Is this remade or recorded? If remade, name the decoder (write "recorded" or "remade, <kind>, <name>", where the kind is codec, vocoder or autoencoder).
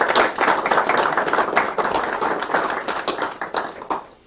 recorded